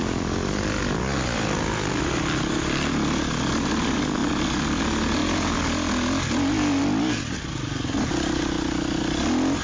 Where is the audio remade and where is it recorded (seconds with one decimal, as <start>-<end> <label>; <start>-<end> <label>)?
0.0-0.4 recorded; 0.4-2.4 remade; 2.4-9.6 recorded